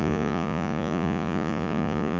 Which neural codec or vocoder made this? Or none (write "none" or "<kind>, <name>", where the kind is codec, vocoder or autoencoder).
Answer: vocoder, Vocos